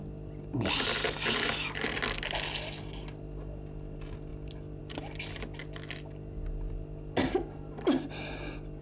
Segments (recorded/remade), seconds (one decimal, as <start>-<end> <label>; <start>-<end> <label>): 0.0-8.8 recorded